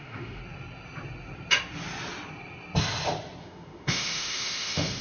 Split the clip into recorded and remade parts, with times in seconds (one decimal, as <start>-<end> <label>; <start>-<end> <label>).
0.0-0.4 remade; 0.4-3.4 recorded; 3.4-5.0 remade